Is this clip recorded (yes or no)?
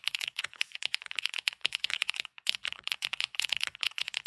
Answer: no